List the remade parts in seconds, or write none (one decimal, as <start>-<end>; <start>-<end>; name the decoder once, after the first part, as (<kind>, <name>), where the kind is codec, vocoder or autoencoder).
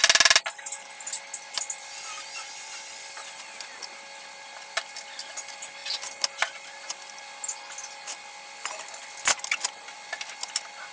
none